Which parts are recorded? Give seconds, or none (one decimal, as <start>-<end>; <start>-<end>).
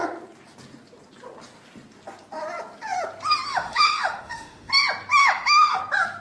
0.0-3.5; 4.7-5.2; 5.8-6.2